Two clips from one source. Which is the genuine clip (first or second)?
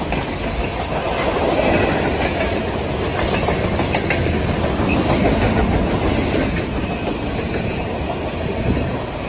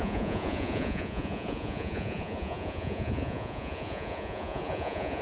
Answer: first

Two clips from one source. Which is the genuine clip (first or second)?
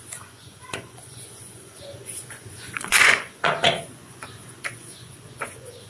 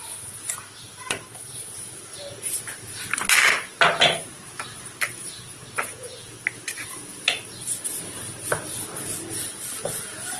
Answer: second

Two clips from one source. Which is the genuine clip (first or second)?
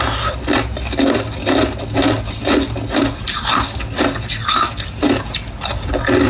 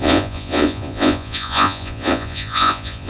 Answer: first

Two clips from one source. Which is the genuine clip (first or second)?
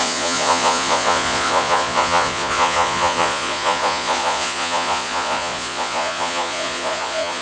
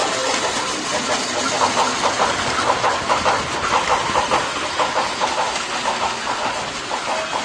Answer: second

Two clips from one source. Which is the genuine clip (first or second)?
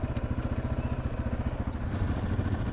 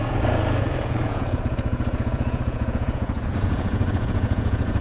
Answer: first